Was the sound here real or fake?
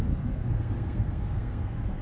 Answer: fake